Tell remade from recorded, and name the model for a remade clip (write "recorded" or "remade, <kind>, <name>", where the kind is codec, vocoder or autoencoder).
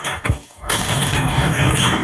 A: remade, codec, DAC